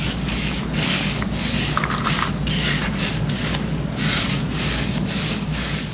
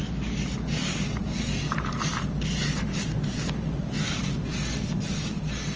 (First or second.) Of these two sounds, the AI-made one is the first